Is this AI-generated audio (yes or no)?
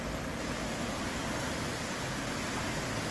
no